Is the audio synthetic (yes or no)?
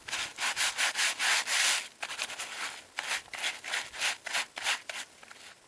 no